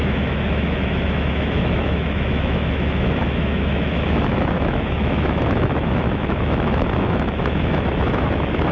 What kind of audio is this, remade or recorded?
remade